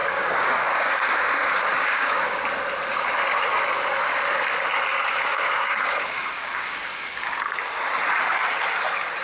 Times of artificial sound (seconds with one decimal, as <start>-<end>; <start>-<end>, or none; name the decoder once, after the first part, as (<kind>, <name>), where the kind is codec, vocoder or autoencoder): 0.0-2.4 (codec, DAC); 5.0-7.9